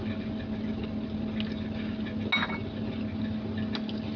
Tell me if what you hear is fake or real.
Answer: real